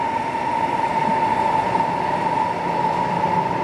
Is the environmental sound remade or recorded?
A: remade